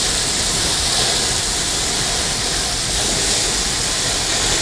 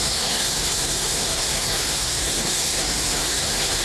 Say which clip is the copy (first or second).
second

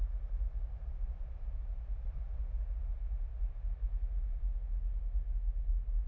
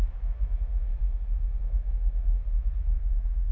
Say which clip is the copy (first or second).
second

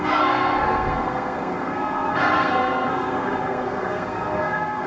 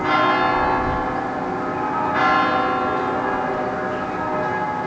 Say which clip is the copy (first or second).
first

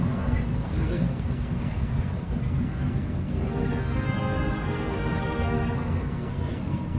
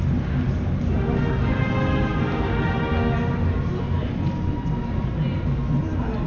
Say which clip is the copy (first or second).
first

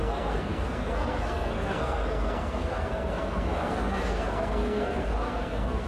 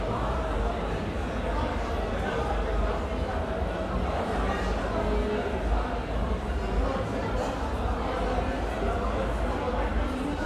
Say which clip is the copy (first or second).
first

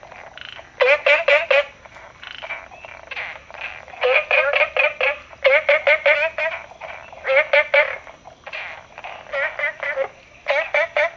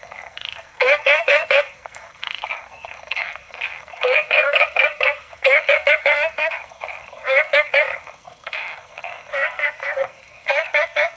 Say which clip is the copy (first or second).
second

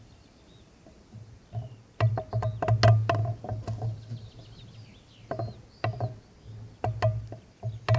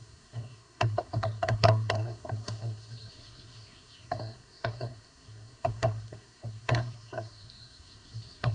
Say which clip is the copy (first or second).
second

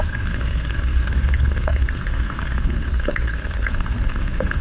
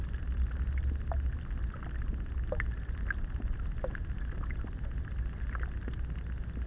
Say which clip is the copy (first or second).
first